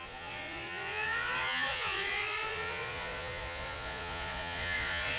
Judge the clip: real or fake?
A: fake